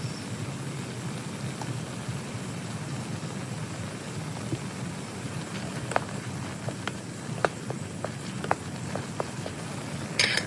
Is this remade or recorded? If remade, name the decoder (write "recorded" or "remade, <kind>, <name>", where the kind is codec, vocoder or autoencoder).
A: recorded